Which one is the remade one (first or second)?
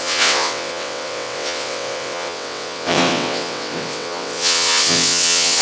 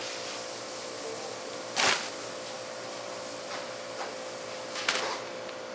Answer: first